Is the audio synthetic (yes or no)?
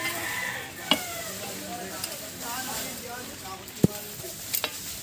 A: no